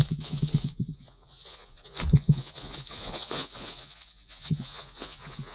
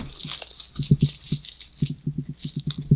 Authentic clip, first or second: second